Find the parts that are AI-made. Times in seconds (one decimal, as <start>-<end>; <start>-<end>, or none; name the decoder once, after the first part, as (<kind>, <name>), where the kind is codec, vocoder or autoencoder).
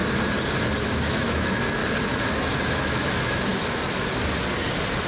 0.9-1.8 (autoencoder, DAC-VAE); 2.4-3.5